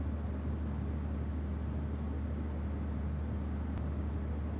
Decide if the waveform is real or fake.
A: real